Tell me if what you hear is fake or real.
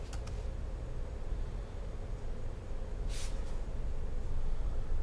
real